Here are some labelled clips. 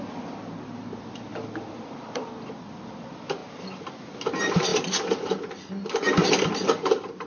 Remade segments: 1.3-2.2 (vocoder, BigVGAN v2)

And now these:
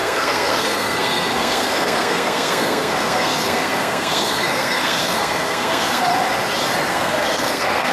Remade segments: 0.0-6.1 (codec, SNAC); 6.9-7.9

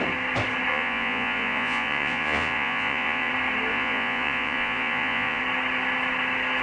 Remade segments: 0.7-3.3 (vocoder, Vocos); 3.7-5.4

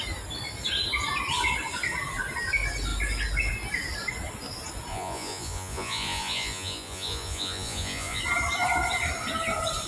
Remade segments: 4.9-8.2 (vocoder, Vocos)

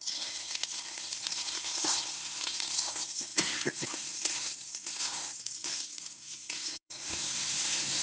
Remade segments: 0.0-8.0 (codec, SNAC)